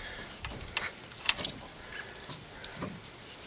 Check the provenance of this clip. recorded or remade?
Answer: recorded